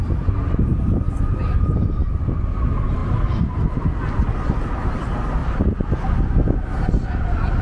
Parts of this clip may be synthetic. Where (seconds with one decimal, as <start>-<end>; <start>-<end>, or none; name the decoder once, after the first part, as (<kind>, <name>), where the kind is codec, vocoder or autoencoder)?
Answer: 5.4-5.9 (vocoder, BigVGAN v2)